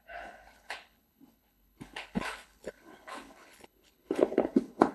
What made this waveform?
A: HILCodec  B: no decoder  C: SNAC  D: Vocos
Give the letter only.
A